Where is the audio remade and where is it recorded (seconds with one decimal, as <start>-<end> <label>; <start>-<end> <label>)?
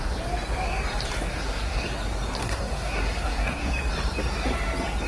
0.0-1.3 recorded; 1.3-1.8 remade; 1.8-2.4 recorded; 2.4-3.7 remade; 3.7-5.1 recorded